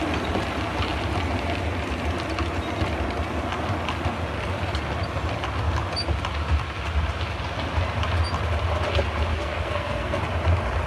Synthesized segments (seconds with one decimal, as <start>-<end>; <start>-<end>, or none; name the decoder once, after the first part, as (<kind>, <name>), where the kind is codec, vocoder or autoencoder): 9.3-10.2 (codec, SNAC)